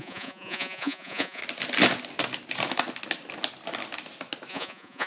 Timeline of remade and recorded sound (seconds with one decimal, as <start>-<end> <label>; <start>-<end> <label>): 0.0-1.4 remade; 1.4-4.5 recorded; 4.5-5.1 remade